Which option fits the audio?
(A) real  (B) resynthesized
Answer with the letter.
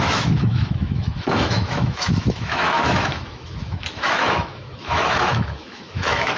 B